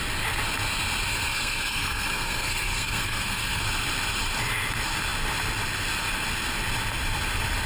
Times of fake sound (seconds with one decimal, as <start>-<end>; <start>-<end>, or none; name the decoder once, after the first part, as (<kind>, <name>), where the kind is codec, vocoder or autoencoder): 1.1-3.6 (codec, SNAC)